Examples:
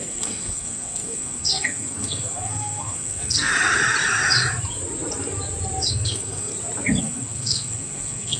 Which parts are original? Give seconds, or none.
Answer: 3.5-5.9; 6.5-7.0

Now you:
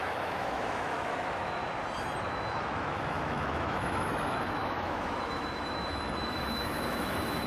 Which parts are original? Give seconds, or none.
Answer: 1.6-2.2

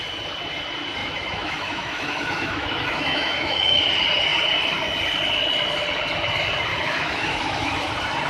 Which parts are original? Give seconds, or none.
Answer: 0.0-1.0; 3.8-6.7; 7.9-8.3